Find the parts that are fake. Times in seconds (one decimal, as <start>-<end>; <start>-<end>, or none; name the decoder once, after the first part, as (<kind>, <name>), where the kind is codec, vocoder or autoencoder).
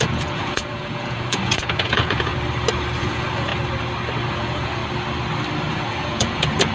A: 0.0-2.3 (vocoder, Vocos); 3.0-3.5; 4.3-4.8; 5.7-6.7